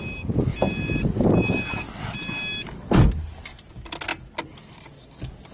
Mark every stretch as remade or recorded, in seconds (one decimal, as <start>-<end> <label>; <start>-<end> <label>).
0.0-5.5 recorded